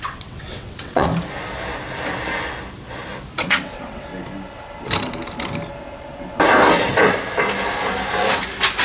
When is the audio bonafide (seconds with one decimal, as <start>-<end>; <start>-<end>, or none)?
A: 1.1-3.4; 4.1-8.8